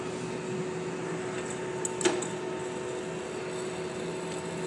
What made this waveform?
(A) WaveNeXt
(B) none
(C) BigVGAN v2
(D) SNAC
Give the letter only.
B